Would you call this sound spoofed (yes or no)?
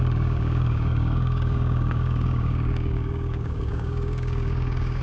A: yes